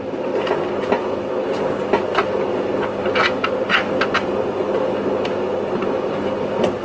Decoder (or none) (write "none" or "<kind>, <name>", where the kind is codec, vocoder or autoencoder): none